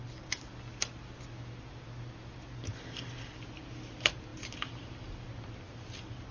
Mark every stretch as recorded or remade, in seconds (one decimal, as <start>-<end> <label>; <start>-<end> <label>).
0.0-6.3 recorded